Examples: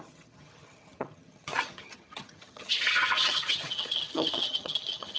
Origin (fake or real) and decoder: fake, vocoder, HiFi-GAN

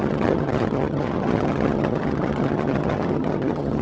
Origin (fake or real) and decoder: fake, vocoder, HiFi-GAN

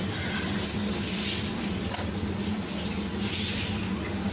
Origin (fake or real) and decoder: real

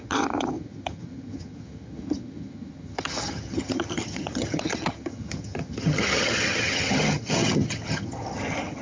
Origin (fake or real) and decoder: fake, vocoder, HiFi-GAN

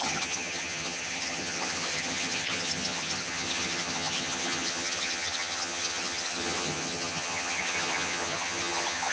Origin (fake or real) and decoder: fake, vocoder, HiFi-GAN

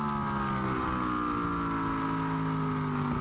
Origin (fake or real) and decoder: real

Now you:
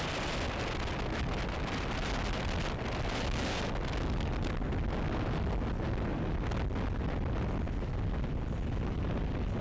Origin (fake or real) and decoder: real